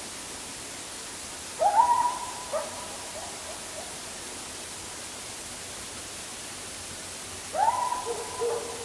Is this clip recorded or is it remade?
recorded